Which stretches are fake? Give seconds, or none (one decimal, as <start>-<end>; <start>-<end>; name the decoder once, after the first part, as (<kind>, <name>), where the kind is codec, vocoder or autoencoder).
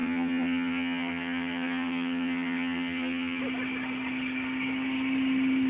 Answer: 0.0-3.4 (vocoder, HiFi-GAN)